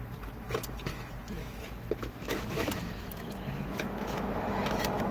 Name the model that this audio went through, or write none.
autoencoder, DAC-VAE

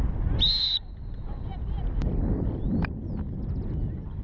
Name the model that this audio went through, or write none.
vocoder, BigVGAN v2